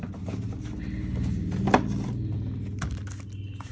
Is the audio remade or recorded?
recorded